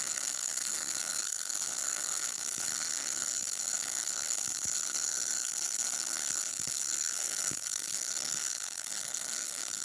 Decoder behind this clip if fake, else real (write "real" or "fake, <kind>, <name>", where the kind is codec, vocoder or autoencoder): fake, codec, SNAC